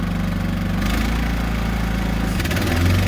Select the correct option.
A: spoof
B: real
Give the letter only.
B